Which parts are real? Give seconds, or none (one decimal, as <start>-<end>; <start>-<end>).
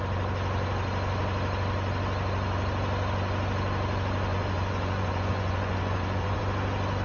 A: 0.0-4.3; 6.4-7.0